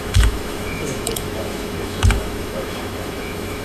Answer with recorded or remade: remade